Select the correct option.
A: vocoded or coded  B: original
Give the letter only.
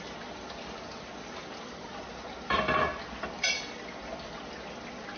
B